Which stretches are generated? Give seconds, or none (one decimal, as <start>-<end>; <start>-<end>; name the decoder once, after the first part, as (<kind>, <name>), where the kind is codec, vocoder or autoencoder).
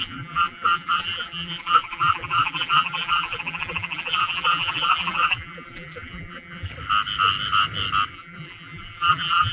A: 0.0-6.7 (vocoder, BigVGAN v2); 8.1-9.5